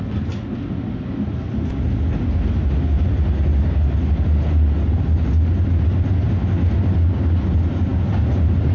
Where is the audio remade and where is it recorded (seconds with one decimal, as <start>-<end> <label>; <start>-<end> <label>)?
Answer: 0.0-8.7 recorded